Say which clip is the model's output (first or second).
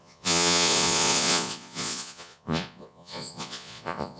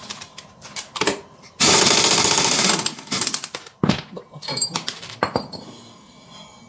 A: first